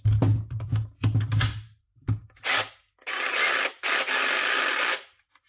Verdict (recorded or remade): recorded